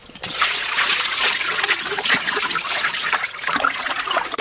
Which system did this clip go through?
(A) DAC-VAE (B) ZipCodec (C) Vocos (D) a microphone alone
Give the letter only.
C